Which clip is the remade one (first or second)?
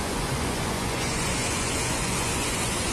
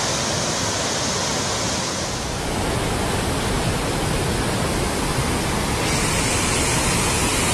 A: first